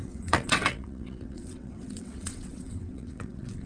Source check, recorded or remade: remade